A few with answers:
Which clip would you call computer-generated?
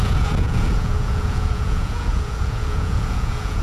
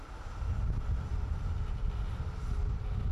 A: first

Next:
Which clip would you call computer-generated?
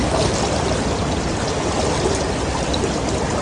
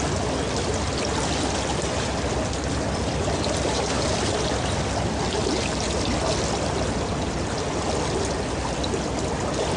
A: first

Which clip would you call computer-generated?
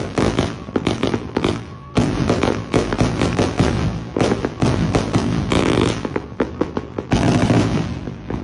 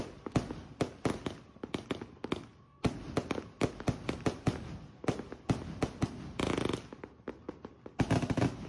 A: first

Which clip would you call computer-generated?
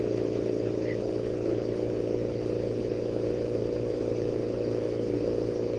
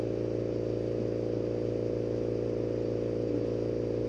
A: first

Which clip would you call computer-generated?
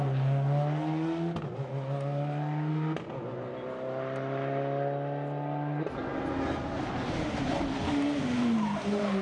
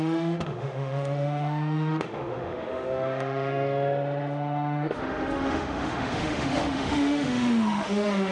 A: second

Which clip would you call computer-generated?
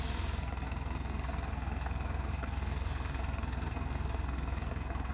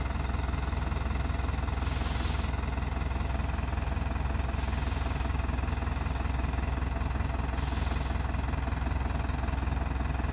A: first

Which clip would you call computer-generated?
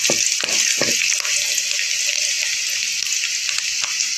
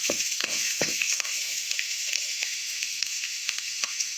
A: second